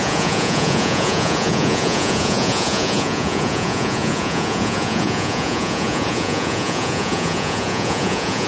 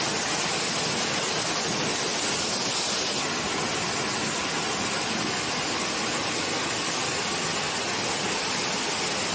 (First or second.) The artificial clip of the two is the first